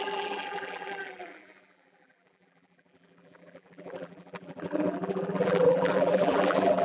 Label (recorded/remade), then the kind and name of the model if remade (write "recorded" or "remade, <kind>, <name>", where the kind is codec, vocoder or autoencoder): remade, vocoder, BigVGAN v2